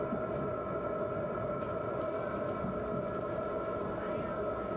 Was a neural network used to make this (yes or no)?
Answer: no